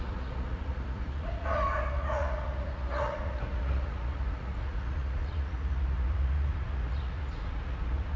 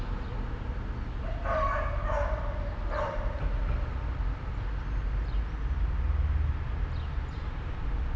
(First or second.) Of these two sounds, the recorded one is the second